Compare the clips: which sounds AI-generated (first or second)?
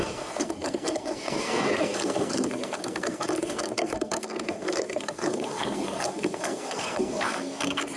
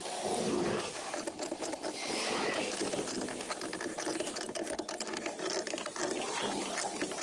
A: first